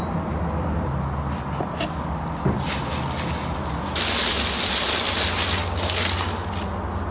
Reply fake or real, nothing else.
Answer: real